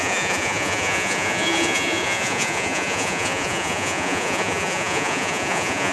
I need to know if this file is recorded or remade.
remade